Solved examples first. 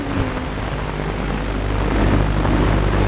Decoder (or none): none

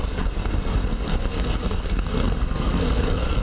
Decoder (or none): codec, SNAC